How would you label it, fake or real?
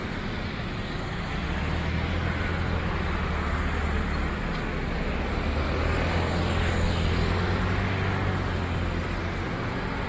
real